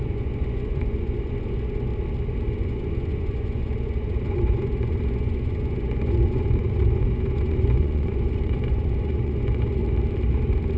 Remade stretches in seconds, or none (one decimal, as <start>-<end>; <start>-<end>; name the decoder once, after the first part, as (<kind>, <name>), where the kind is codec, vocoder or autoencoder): 0.0-1.9 (vocoder, Vocos); 2.5-9.8